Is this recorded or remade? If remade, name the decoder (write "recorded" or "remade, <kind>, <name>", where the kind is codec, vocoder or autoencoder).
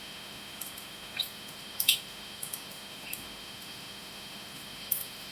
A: remade, autoencoder, DAC-VAE